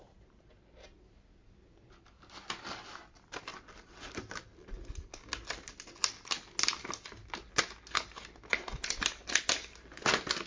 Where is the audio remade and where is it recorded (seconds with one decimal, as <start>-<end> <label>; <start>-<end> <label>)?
0.0-10.5 recorded